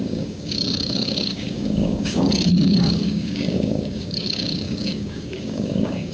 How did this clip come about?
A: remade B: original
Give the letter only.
A